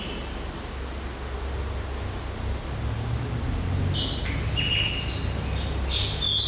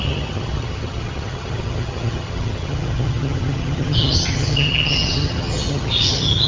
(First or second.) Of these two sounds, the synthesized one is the second